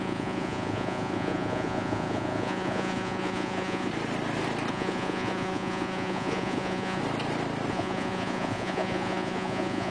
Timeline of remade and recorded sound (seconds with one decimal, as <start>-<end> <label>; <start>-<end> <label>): 0.0-3.9 remade; 3.9-4.7 recorded; 4.7-7.0 remade; 7.0-7.7 recorded; 7.7-9.9 remade